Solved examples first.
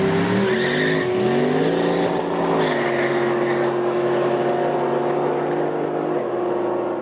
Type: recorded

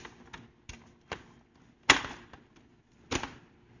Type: recorded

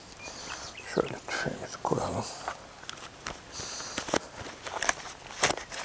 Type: recorded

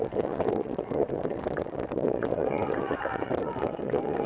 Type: remade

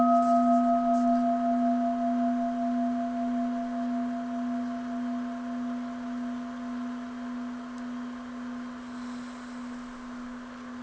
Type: recorded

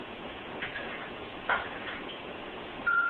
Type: remade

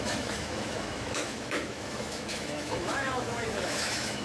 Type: remade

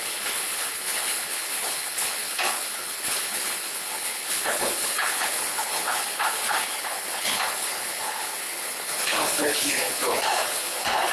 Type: remade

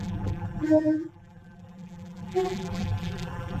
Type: remade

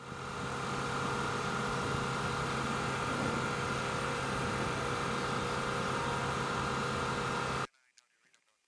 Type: recorded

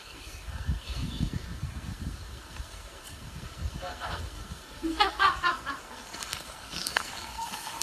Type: remade